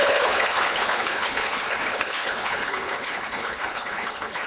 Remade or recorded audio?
remade